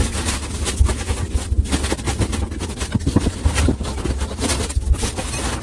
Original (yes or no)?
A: yes